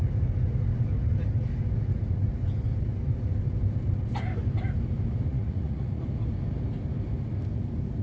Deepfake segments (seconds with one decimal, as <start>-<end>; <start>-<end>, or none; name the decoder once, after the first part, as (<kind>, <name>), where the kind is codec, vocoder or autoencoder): 5.3-6.0 (vocoder, Vocos)

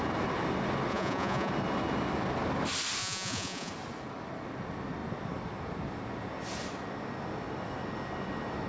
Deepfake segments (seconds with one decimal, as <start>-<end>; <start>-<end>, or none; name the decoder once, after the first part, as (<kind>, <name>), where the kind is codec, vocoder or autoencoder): 0.9-1.5 (vocoder, Vocos); 3.0-3.7

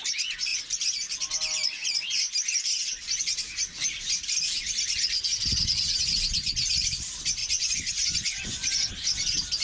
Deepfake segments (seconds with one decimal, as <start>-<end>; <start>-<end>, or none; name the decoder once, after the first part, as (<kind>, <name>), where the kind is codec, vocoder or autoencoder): 5.3-6.2 (vocoder, Vocos); 7.4-8.9

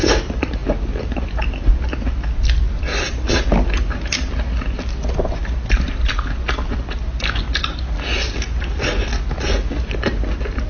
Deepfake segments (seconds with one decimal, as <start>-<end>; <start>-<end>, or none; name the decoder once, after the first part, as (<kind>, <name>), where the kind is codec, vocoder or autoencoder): none

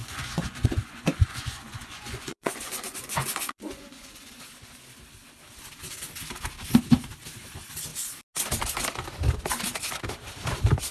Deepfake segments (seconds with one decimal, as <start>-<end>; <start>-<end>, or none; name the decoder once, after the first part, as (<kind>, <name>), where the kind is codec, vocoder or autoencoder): 0.0-4.4 (vocoder, Vocos)

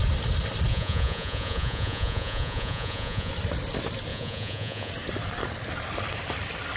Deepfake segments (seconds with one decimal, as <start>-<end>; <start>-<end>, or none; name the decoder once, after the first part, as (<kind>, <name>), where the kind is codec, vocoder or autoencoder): 0.7-3.3 (vocoder, Vocos); 4.1-4.9

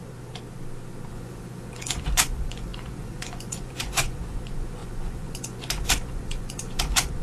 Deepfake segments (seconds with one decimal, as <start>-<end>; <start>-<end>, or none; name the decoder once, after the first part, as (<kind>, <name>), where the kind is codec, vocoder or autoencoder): 1.1-7.2 (vocoder, Vocos)